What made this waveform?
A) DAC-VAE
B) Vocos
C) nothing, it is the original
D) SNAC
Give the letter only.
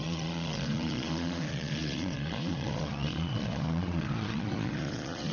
B